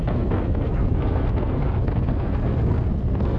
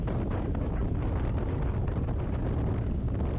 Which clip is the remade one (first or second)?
first